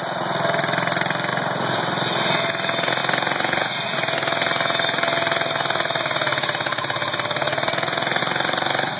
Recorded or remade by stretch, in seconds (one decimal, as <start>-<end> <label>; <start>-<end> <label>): 0.0-9.0 recorded